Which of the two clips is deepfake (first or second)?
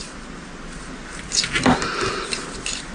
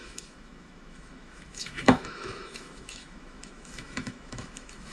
second